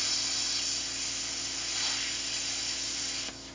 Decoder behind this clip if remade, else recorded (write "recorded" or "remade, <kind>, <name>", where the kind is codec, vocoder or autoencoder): recorded